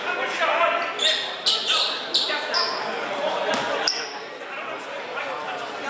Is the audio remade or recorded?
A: recorded